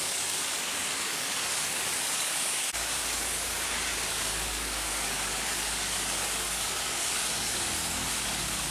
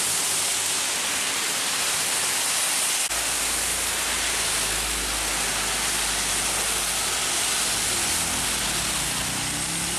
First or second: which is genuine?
second